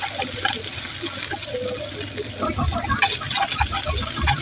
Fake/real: real